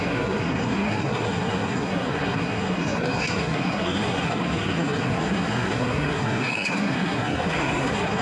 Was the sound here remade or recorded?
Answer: remade